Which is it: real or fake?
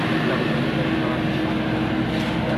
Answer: real